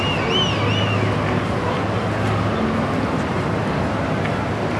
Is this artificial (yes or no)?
no